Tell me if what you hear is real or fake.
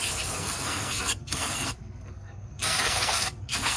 fake